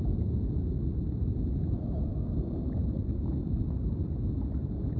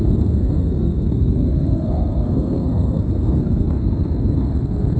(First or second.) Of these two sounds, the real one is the first